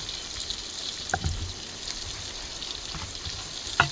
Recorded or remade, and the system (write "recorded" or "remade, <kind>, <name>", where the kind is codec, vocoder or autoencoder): recorded